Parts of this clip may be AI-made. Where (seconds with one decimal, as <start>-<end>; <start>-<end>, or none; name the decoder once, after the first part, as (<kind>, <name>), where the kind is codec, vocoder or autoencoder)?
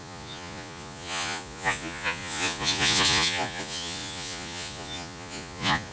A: 0.0-5.9 (vocoder, Vocos)